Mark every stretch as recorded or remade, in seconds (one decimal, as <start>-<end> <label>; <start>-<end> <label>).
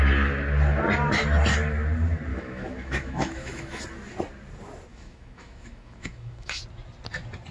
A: 0.0-2.3 recorded; 2.3-3.8 remade; 3.8-4.9 recorded; 4.9-6.6 remade; 6.6-7.5 recorded